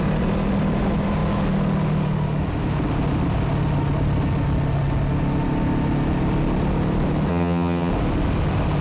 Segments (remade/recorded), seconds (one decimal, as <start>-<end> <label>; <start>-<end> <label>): 0.0-7.3 recorded; 7.3-7.9 remade; 7.9-8.8 recorded